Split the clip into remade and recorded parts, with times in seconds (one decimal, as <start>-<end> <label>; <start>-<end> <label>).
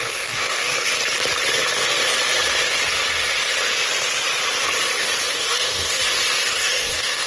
0.0-0.9 remade; 0.9-5.3 recorded; 5.3-6.0 remade; 6.0-6.5 recorded; 6.5-7.3 remade